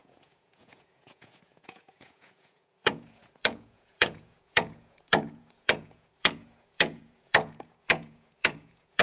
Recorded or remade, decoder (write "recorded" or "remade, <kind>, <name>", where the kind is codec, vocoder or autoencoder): remade, vocoder, Vocos